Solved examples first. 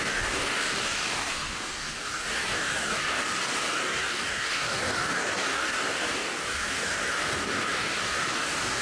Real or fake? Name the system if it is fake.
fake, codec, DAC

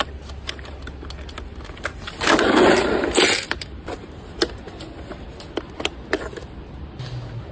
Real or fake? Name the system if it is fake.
real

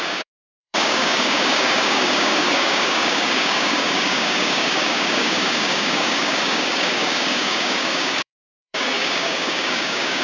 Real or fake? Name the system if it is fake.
fake, codec, DAC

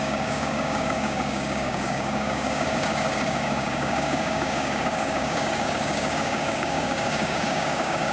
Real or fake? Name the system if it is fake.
fake, codec, DAC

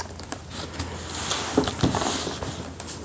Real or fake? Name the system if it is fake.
real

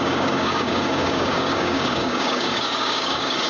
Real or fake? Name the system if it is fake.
fake, codec, DAC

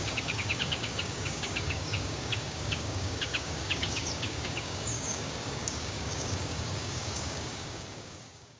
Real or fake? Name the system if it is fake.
fake, codec, DAC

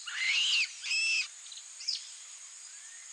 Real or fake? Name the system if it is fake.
real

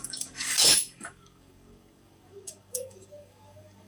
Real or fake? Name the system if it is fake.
fake, codec, DAC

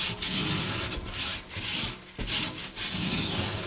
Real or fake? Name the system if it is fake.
real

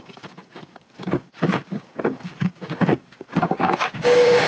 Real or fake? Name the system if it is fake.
fake, codec, DAC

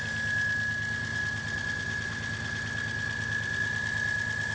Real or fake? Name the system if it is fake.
real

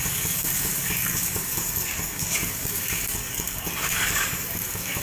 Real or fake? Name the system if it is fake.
fake, codec, DAC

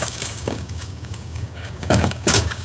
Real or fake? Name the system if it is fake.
fake, codec, DAC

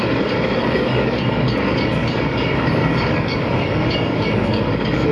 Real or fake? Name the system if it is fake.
fake, codec, DAC